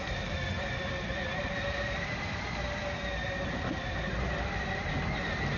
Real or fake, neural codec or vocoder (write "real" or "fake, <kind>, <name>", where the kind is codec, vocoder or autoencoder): real